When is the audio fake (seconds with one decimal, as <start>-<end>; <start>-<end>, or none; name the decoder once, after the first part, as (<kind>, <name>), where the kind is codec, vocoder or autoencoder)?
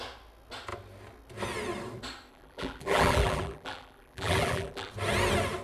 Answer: 2.3-4.9 (vocoder, BigVGAN v2)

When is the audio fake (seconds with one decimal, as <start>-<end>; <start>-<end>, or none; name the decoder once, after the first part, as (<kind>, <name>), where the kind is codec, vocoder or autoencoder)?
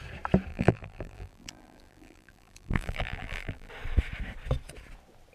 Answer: 0.5-3.7 (vocoder, BigVGAN v2)